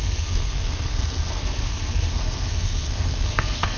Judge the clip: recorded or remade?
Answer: remade